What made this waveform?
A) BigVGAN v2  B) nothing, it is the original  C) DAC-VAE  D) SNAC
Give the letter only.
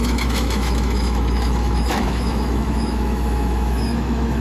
C